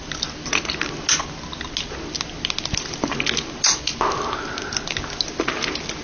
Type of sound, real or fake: real